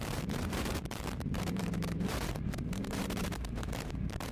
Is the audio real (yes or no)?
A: no